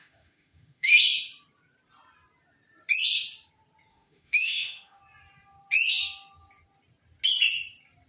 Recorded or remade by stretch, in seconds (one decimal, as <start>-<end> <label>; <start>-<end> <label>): 0.0-1.0 remade; 1.0-3.9 recorded; 3.9-5.0 remade; 5.0-8.1 recorded